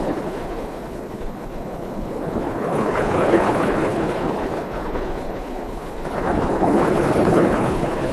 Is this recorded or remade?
remade